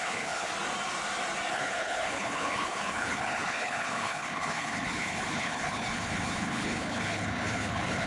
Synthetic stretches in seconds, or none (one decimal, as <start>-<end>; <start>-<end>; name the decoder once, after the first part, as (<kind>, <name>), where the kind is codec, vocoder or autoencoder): 0.0-0.5 (codec, HILCodec); 1.5-8.1